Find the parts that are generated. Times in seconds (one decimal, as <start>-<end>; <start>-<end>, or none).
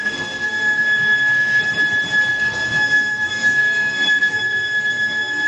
0.0-1.6; 2.3-5.5